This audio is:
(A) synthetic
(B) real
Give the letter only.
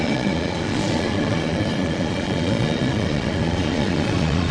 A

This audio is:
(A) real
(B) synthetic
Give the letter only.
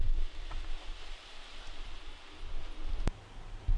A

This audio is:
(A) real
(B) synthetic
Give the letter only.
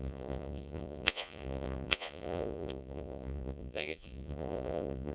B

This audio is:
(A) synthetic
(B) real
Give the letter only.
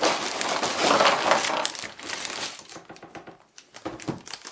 B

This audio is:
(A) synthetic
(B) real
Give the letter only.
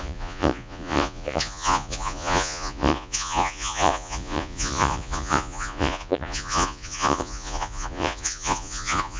A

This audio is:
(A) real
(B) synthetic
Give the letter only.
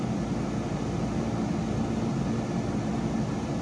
A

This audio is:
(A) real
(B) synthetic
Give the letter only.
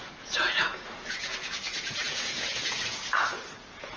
B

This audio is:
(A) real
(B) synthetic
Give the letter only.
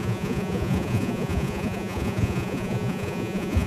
B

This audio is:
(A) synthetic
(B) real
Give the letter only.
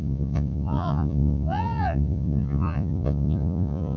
A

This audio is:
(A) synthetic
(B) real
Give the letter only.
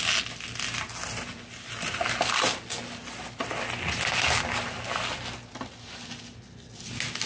B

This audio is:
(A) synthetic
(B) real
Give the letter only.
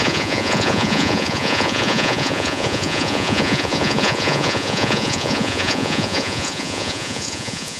A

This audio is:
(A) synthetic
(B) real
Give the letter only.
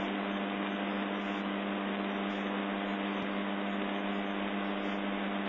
B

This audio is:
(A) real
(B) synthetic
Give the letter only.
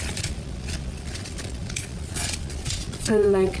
B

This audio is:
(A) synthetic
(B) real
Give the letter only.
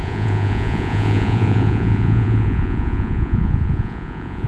A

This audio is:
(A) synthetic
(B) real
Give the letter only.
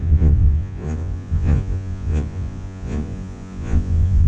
A